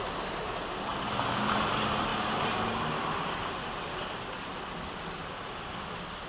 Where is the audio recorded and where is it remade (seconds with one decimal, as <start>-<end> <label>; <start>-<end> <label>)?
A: 0.0-0.9 recorded; 0.9-1.7 remade; 1.7-2.1 recorded; 2.1-2.7 remade; 2.7-6.3 recorded